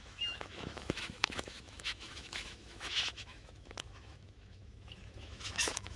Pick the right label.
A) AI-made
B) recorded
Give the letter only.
A